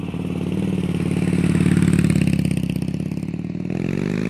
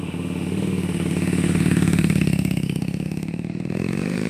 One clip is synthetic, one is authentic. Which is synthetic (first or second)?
second